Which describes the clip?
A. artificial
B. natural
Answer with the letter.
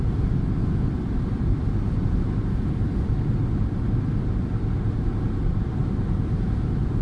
A